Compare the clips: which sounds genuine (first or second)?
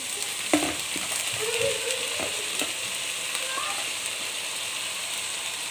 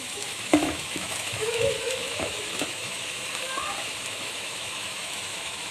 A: first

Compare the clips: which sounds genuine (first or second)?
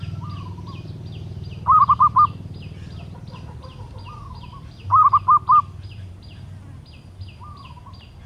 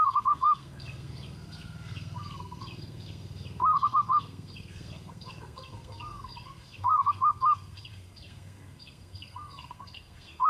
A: first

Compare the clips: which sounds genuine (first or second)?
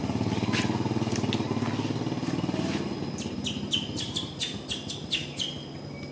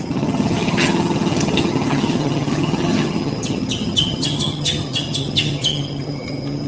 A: first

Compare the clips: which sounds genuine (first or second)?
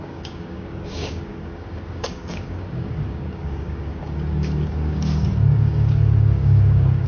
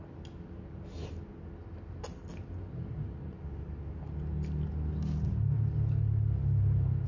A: second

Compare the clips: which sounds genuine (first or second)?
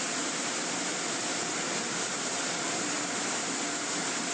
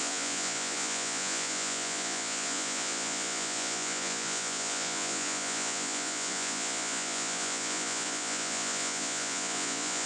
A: first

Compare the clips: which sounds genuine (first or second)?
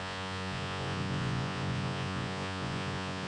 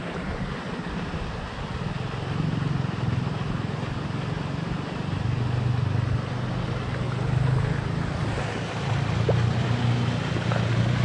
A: second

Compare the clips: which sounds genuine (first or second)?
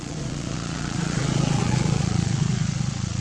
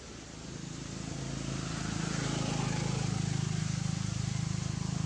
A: second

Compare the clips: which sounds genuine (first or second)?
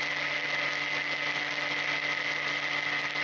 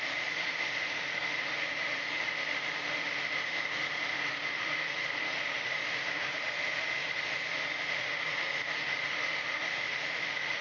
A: first